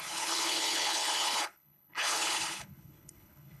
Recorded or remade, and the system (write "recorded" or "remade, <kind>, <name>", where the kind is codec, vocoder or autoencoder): remade, codec, HILCodec